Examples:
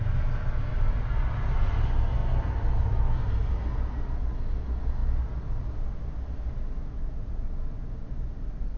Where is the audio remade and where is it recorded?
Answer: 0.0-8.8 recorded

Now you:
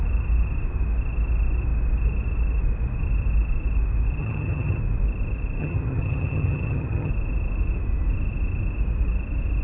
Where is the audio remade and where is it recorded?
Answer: 0.0-4.2 recorded; 4.2-4.8 remade; 4.8-5.6 recorded; 5.6-7.1 remade; 7.1-9.6 recorded